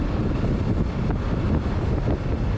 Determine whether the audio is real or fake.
real